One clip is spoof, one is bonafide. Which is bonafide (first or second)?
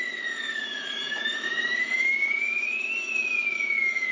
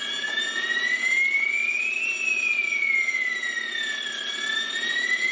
second